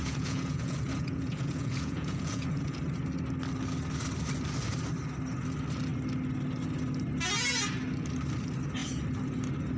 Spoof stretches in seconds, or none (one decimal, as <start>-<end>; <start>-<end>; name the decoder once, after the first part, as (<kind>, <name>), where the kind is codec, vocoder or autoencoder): 0.0-2.8 (vocoder, Vocos)